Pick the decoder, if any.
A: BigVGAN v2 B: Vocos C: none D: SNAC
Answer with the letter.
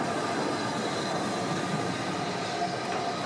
C